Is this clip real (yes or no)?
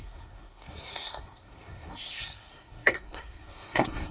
no